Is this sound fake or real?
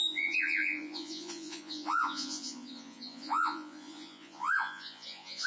fake